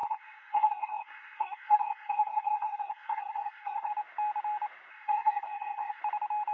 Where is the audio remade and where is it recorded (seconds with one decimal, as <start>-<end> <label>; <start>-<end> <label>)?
0.0-3.9 remade; 3.9-4.9 recorded; 4.9-6.0 remade; 6.0-6.5 recorded